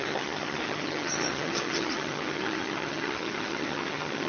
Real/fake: fake